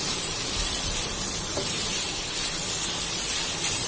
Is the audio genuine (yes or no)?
no